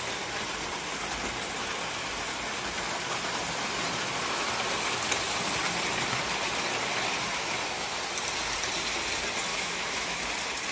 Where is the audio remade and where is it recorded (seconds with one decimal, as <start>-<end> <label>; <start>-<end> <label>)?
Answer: 0.0-9.5 recorded; 9.5-10.2 remade; 10.2-10.7 recorded